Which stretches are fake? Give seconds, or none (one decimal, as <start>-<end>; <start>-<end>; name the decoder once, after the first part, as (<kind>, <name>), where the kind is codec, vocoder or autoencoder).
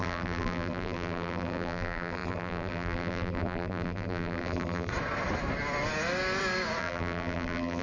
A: 0.0-4.9 (vocoder, BigVGAN v2); 6.8-7.8